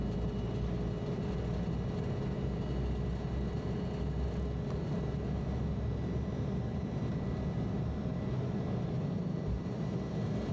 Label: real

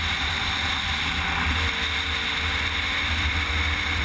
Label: real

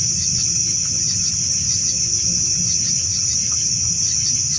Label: real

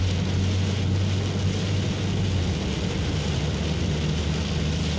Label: real